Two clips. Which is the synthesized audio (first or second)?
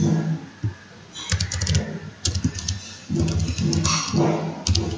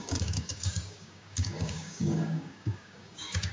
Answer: second